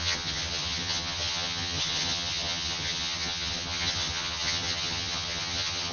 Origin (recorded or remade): remade